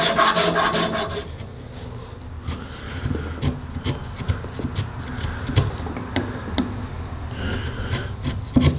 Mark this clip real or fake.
real